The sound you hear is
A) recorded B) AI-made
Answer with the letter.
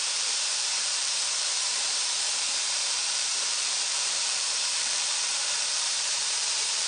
B